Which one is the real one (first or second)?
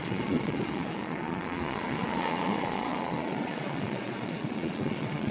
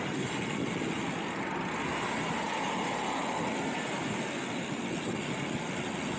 second